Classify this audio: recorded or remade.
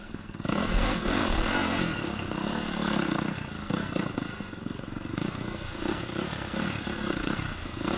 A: remade